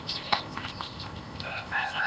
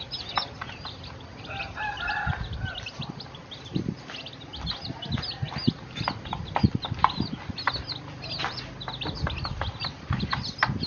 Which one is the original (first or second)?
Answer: second